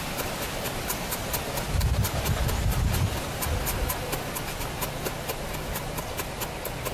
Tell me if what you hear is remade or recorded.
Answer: recorded